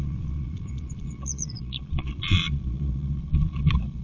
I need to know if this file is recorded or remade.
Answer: remade